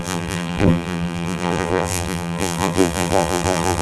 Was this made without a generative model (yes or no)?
no